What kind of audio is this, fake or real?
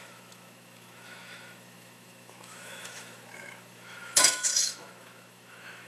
fake